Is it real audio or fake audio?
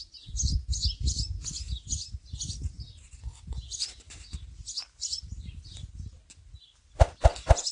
real